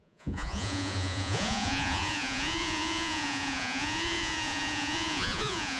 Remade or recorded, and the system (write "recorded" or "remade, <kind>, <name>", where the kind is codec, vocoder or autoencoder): remade, vocoder, Vocos